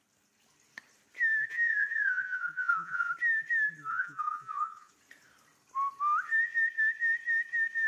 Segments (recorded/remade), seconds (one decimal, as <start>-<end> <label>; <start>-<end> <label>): 0.0-1.5 recorded; 1.5-3.1 remade; 3.1-3.9 recorded; 3.9-4.9 remade; 4.9-7.9 recorded